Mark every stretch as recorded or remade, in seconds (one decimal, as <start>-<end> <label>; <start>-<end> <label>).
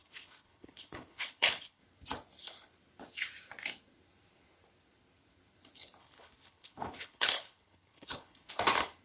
0.0-1.8 remade; 1.8-6.0 recorded; 6.0-8.5 remade; 8.5-9.0 recorded